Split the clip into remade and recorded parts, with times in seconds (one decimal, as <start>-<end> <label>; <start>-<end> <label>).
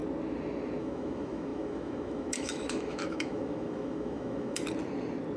0.0-0.8 recorded; 0.8-4.6 remade; 4.6-5.4 recorded